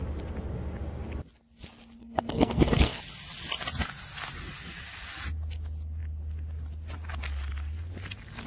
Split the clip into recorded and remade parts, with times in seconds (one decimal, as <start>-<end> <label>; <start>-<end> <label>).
0.0-2.0 recorded; 2.0-3.0 remade; 3.0-8.5 recorded